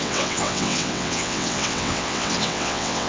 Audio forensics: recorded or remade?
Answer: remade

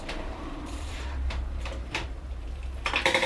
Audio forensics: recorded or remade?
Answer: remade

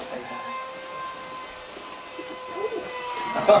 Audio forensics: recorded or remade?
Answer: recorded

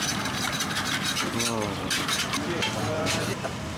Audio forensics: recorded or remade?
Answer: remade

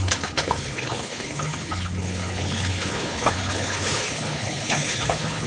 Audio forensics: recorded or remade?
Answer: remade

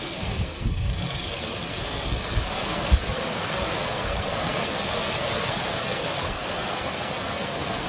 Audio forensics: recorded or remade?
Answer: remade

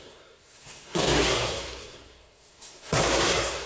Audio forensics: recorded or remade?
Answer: remade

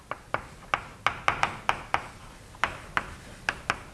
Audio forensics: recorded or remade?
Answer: recorded